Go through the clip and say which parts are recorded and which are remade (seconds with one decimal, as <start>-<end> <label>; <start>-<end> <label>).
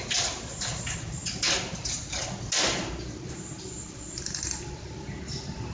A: 0.0-5.7 recorded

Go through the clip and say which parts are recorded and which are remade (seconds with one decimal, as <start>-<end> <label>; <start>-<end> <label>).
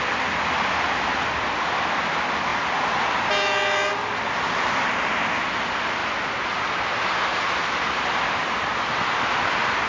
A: 0.0-9.9 recorded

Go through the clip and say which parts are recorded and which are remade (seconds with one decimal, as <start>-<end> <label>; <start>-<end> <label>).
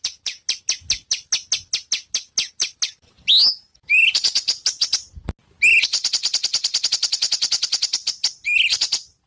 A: 0.0-9.3 recorded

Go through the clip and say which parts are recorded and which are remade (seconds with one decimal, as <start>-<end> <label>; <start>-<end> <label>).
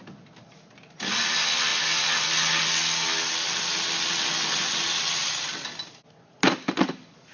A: 0.0-7.3 recorded